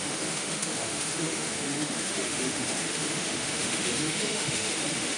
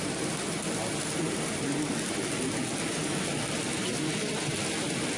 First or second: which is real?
second